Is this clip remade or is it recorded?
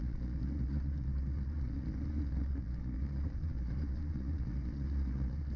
remade